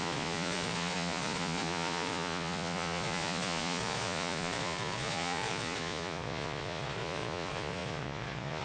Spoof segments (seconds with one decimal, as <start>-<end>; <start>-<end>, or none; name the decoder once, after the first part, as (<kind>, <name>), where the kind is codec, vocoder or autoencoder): 0.0-8.6 (vocoder, Vocos)

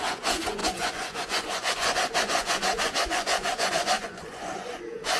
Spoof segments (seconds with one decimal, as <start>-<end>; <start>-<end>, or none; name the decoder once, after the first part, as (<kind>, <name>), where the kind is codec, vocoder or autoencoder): 0.0-5.2 (vocoder, Vocos)

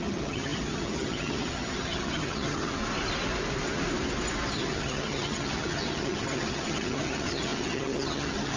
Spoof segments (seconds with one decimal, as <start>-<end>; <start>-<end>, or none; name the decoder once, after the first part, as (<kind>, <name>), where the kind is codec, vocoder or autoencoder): 0.0-2.8 (vocoder, HiFi-GAN); 4.5-8.6

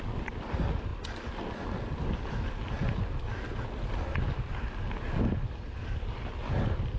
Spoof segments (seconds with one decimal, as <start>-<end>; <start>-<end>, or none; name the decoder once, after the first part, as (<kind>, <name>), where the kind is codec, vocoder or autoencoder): none

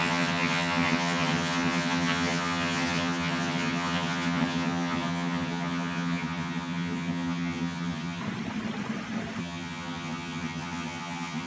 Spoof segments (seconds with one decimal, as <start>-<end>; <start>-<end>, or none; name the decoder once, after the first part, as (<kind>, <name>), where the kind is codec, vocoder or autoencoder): 0.0-8.2 (vocoder, HiFi-GAN); 9.4-11.5

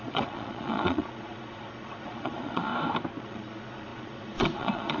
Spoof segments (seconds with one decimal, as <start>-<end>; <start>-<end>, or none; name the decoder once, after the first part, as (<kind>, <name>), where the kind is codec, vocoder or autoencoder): 0.0-2.7 (vocoder, Vocos); 3.2-5.0

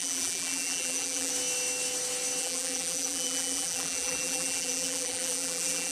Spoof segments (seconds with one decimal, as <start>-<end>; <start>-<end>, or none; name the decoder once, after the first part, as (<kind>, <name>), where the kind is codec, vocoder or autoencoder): 0.0-1.3 (vocoder, BigVGAN v2); 2.4-5.9

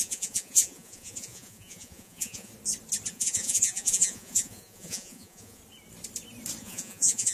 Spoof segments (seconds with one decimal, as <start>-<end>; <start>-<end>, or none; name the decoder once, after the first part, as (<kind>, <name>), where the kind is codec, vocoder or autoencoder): 0.0-2.5 (vocoder, Vocos); 3.1-5.6; 6.6-7.3